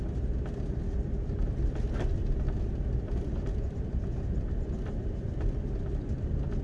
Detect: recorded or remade remade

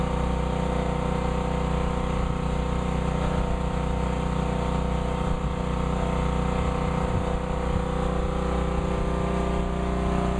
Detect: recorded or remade recorded